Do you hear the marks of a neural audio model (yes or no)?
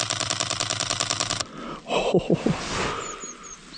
no